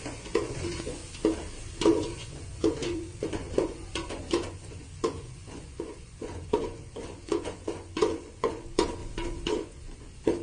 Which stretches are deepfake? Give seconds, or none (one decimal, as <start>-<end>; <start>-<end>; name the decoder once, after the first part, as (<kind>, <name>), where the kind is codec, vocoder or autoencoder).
0.0-1.0 (vocoder, Vocos); 1.8-10.4

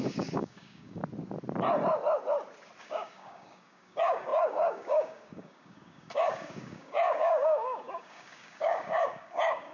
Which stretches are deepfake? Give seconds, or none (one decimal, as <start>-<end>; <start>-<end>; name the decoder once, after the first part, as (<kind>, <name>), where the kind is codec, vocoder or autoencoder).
0.0-1.0 (codec, DAC); 2.8-9.7

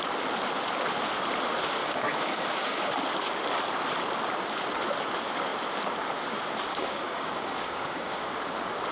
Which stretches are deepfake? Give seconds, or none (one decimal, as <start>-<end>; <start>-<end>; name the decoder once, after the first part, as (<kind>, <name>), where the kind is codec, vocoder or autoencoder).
1.8-2.9 (codec, DAC); 6.7-8.3

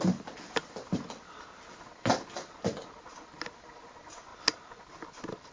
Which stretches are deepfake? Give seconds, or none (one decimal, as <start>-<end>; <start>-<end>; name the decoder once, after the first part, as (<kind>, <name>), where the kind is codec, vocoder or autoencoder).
none

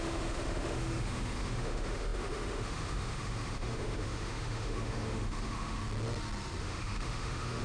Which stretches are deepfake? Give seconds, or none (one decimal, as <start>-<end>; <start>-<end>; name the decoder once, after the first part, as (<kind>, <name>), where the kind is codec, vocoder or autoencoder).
0.0-5.8 (autoencoder, DAC-VAE); 6.6-7.6

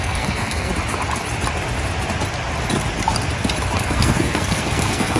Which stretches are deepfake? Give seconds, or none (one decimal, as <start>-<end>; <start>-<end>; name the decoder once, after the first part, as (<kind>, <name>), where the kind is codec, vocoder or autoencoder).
0.0-0.7 (codec, SNAC); 3.8-5.2